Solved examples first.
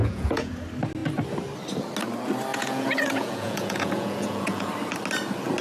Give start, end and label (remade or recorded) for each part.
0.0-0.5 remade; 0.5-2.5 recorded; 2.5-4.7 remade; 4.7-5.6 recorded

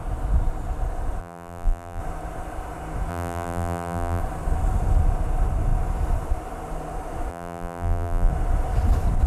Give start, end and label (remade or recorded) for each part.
0.0-1.2 recorded; 1.2-2.0 remade; 2.0-3.1 recorded; 3.1-4.2 remade; 4.2-7.3 recorded; 7.3-8.3 remade; 8.3-9.3 recorded

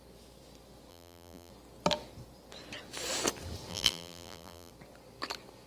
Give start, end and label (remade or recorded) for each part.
0.0-0.9 recorded; 0.9-1.5 remade; 1.5-3.7 recorded; 3.7-4.7 remade; 4.7-5.7 recorded

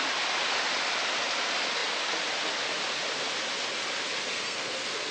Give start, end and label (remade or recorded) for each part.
0.0-4.3 recorded; 4.3-5.1 remade

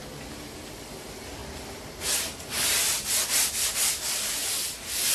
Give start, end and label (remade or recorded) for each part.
0.0-5.1 recorded

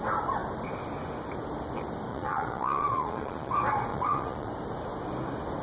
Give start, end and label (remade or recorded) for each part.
0.0-2.1 recorded; 2.1-3.5 remade; 3.5-3.9 recorded; 3.9-4.5 remade; 4.5-5.6 recorded